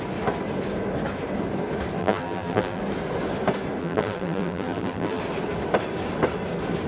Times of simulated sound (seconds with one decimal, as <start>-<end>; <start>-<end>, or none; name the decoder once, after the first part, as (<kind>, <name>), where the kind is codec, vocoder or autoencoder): 2.0-2.8 (vocoder, BigVGAN v2); 3.8-5.2